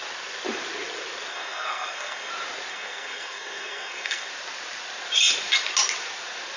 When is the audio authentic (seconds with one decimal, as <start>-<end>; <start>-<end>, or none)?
0.0-1.3; 2.3-2.7; 4.3-6.6